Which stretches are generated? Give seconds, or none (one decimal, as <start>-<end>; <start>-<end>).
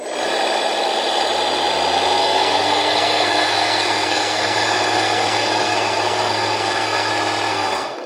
2.2-7.1; 7.5-8.1